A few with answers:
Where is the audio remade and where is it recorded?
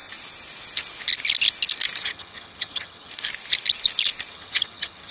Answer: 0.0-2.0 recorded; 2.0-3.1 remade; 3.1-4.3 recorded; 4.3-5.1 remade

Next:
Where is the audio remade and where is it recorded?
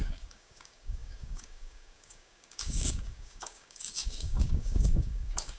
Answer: 0.0-5.6 remade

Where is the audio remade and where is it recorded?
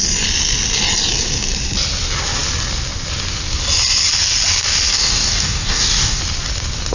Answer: 0.0-4.9 recorded; 4.9-6.2 remade; 6.2-6.9 recorded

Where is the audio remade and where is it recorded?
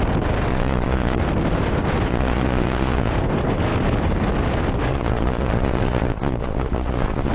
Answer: 0.0-0.5 recorded; 0.5-1.2 remade; 1.2-2.1 recorded; 2.1-3.1 remade; 3.1-4.9 recorded; 4.9-7.3 remade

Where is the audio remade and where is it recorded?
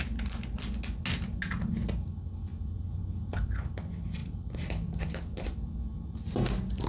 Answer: 0.0-4.2 recorded; 4.2-5.7 remade; 5.7-6.9 recorded